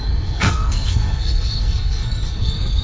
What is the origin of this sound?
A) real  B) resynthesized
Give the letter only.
B